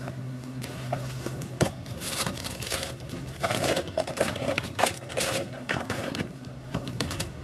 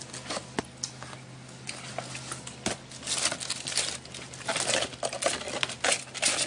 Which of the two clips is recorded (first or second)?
second